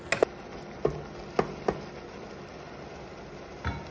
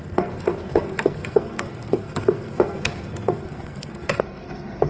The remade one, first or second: second